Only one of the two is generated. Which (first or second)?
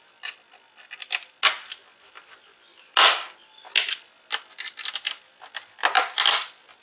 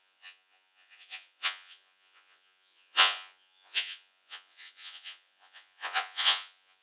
second